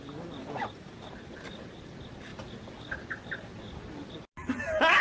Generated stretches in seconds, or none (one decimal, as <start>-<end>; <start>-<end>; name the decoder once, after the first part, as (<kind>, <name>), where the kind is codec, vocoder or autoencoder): none